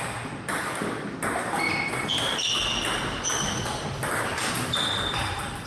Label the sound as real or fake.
real